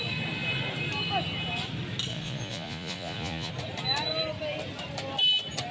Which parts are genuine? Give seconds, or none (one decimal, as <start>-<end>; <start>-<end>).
0.0-2.1; 3.5-5.7